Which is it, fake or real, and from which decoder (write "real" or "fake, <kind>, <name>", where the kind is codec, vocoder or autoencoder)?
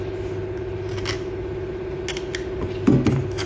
real